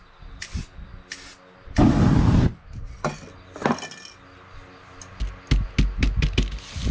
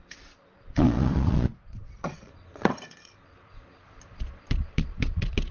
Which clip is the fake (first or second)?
second